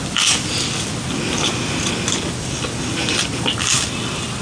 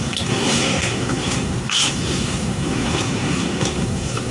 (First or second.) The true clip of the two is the first